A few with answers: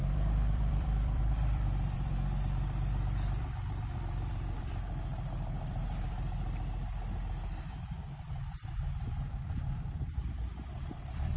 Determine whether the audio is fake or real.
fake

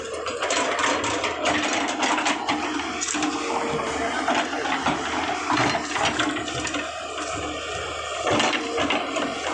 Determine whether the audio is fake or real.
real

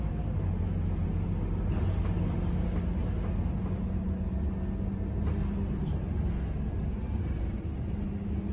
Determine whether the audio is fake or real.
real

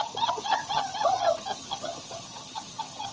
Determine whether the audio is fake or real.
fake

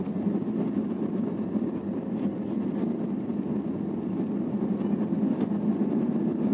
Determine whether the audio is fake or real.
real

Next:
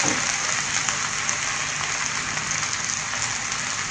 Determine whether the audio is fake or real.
real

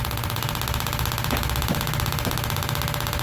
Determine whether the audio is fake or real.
real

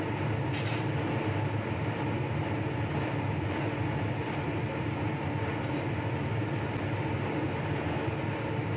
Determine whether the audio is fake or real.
real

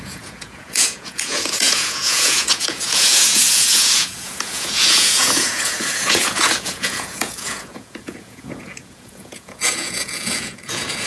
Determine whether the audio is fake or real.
fake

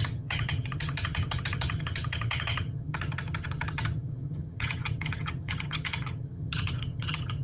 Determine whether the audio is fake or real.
fake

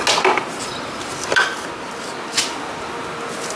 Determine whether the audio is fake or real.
real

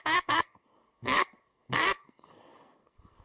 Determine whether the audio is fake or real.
fake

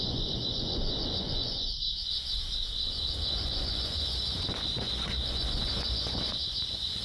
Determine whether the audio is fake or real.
fake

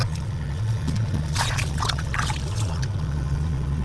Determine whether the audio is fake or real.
fake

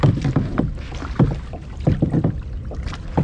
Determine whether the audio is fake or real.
real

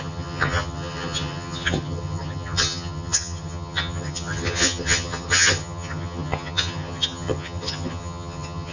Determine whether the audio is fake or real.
fake